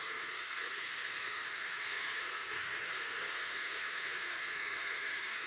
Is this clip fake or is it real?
fake